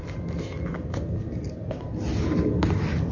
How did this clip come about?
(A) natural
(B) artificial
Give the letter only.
A